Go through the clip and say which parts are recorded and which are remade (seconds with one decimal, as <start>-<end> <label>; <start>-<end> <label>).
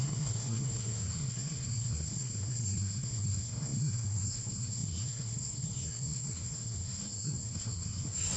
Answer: 0.0-8.4 remade